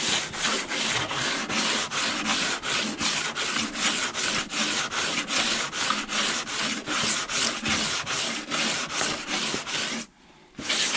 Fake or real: real